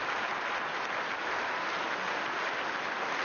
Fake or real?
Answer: real